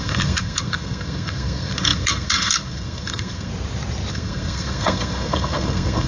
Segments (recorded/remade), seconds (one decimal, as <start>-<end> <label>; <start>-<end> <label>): 0.0-3.5 remade; 3.5-4.1 recorded; 4.1-6.1 remade